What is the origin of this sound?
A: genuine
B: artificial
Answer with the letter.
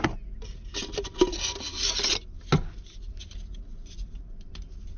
A